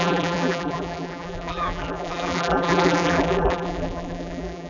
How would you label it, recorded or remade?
remade